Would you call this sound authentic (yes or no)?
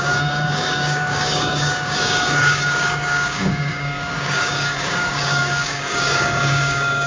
no